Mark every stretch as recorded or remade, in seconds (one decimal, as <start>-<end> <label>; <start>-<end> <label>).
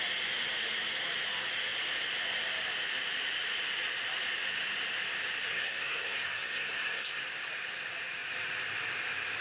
0.0-5.5 recorded; 5.5-7.2 remade; 7.2-9.4 recorded